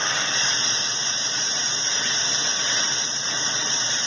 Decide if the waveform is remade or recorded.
remade